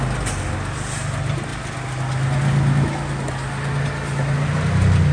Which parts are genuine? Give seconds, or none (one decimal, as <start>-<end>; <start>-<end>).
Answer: 0.0-5.1